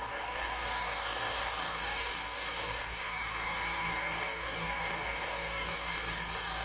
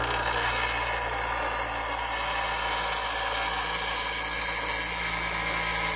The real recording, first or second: second